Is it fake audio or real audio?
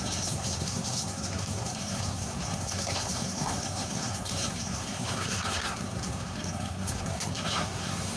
fake